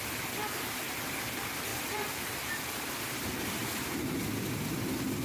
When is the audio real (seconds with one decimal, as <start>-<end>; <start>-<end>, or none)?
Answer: 0.0-1.7; 2.3-3.6; 4.2-5.2